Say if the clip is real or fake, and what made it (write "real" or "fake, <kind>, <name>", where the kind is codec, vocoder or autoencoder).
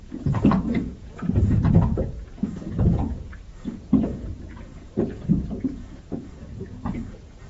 fake, vocoder, Vocos